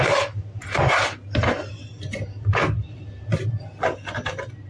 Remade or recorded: recorded